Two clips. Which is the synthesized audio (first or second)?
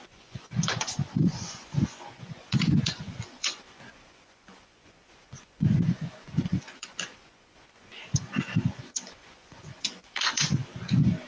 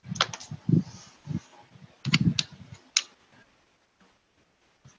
first